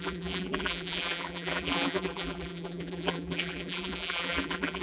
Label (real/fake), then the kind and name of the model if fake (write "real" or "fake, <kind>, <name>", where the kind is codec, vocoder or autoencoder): fake, vocoder, BigVGAN v2